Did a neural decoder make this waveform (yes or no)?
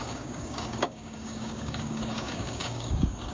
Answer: yes